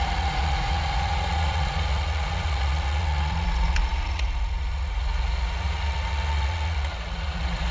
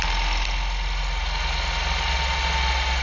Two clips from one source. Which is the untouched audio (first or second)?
second